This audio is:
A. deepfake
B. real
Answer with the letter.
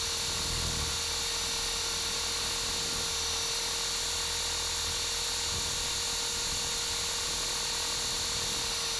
B